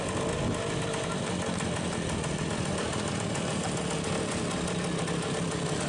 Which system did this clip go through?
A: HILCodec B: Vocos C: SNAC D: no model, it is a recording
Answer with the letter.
D